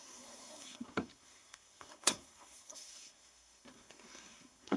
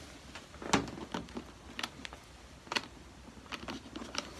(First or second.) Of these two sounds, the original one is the second